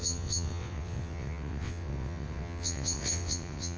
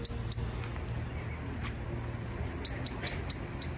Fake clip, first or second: first